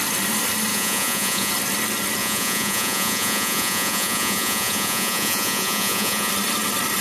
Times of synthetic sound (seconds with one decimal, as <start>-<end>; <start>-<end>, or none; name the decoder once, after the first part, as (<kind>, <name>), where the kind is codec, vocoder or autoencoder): 0.7-1.5 (vocoder, Vocos); 2.2-6.3